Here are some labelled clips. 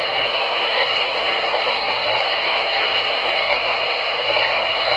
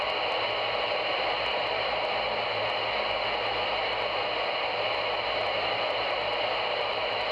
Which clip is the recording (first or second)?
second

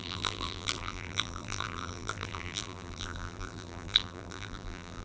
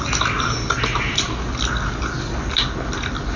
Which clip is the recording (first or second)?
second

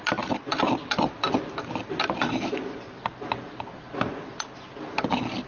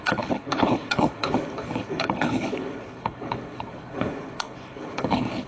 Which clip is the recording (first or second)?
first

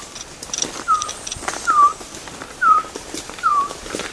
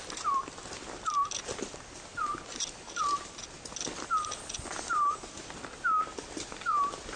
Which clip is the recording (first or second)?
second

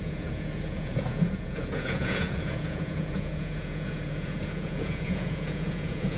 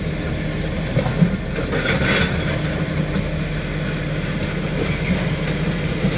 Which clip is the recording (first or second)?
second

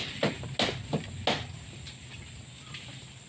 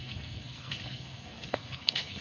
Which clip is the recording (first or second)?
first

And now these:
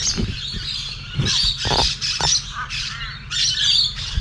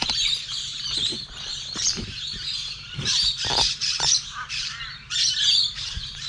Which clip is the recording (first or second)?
first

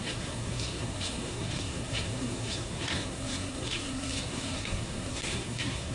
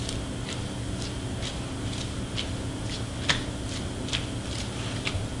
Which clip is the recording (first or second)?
second